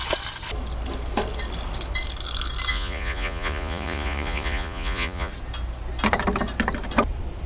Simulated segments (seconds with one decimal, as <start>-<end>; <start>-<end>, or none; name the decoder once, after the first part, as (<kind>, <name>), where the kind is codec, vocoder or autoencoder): 2.7-5.3 (vocoder, Vocos)